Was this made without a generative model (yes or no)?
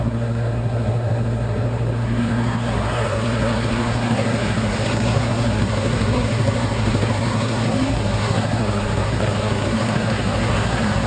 no